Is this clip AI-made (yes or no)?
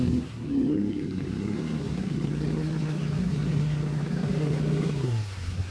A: yes